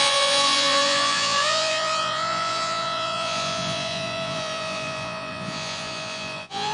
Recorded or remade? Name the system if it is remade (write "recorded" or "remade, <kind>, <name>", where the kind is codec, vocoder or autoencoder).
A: remade, vocoder, Vocos